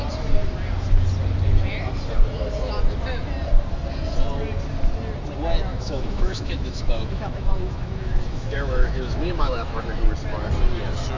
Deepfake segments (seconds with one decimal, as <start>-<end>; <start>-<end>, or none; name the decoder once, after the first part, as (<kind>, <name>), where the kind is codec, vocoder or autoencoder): 5.7-9.8 (autoencoder, DAC-VAE)